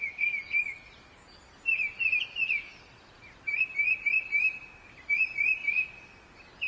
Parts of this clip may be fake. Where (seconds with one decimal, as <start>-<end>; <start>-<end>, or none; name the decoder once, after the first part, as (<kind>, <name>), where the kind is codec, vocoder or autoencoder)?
none

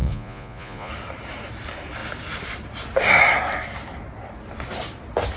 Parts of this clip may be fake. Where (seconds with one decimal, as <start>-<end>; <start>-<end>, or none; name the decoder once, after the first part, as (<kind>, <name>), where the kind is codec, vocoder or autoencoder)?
0.0-0.9 (vocoder, Vocos)

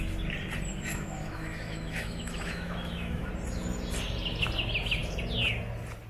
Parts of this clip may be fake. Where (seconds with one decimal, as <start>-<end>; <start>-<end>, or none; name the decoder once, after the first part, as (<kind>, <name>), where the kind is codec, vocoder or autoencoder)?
0.9-3.3 (autoencoder, DAC-VAE)

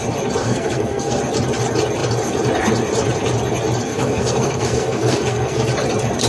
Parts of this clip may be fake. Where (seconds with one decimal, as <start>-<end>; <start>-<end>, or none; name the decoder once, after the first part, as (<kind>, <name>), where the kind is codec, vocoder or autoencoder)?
0.4-1.2 (codec, SNAC); 3.9-5.7

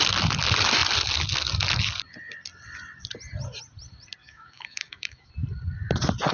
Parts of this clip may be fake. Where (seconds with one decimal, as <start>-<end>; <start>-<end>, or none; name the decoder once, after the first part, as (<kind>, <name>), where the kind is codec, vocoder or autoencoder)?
4.2-5.3 (autoencoder, DAC-VAE)